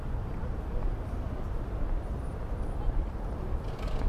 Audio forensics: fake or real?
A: real